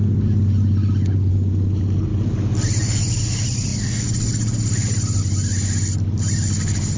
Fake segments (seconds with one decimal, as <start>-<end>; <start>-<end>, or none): none